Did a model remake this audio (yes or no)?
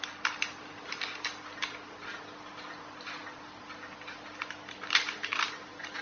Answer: no